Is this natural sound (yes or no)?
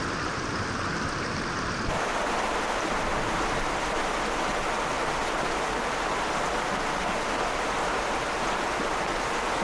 yes